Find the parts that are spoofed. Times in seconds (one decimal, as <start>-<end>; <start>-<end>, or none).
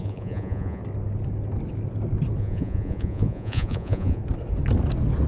0.0-0.8; 2.4-4.2